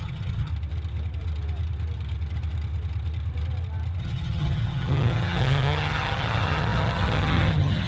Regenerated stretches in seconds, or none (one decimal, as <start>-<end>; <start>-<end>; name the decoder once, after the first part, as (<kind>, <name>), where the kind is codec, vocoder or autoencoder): 0.0-0.5 (vocoder, HiFi-GAN); 4.0-7.9